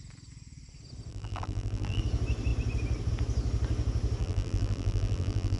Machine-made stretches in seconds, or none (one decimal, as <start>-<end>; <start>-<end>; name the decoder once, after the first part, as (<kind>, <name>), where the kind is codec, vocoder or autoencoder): 1.1-2.0 (vocoder, BigVGAN v2); 4.2-5.6